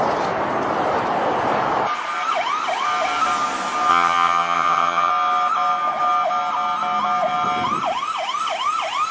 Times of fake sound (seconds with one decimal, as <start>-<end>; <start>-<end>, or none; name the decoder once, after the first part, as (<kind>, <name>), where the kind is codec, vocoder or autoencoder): 3.9-5.1 (vocoder, HiFi-GAN)